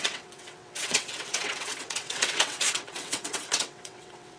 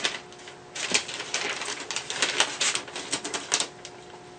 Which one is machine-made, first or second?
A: first